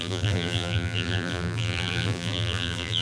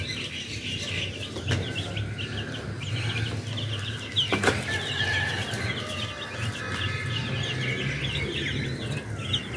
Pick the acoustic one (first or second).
second